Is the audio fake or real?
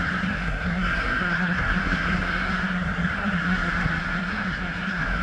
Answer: fake